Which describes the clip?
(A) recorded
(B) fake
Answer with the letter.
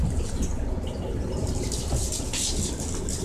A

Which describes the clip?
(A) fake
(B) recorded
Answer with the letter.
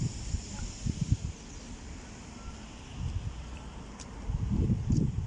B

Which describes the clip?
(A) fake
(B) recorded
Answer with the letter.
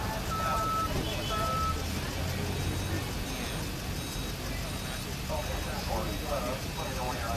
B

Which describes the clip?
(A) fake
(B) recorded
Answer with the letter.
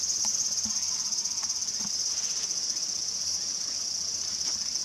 B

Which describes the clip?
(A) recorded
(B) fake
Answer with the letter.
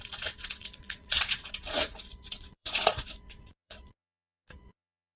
B